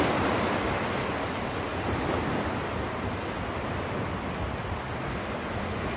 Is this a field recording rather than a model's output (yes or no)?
yes